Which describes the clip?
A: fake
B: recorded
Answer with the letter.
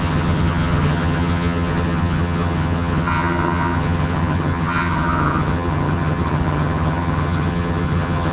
A